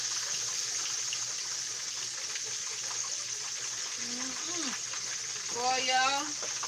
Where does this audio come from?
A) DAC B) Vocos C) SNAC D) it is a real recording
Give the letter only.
D